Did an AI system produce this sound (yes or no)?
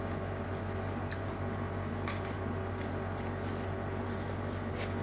no